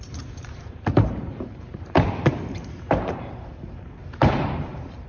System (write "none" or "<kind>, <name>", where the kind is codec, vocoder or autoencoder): vocoder, BigVGAN v2